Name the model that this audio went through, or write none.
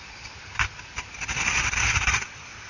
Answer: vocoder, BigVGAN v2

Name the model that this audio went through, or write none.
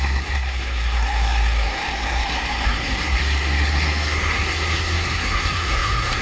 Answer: codec, SNAC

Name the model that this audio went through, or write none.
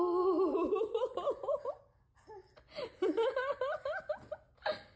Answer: none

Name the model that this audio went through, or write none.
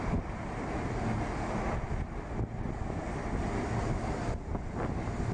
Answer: none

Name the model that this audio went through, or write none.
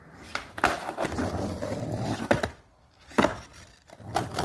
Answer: none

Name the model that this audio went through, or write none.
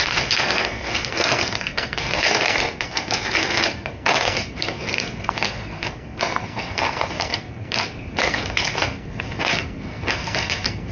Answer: codec, SNAC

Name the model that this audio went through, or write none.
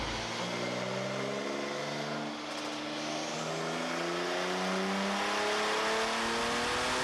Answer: none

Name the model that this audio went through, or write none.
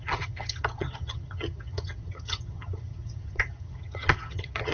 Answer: vocoder, HiFi-GAN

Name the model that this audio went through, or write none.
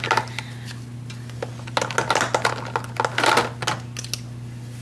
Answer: none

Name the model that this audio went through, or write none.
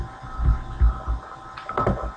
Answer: none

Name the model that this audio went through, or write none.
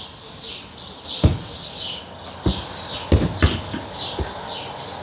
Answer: none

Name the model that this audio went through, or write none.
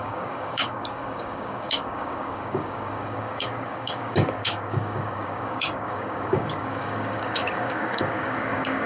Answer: codec, DAC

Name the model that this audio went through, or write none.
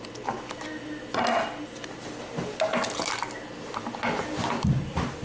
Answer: none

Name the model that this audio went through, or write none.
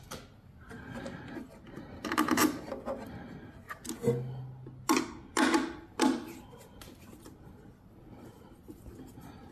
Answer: none